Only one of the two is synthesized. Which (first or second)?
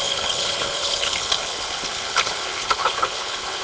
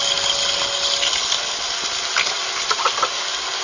first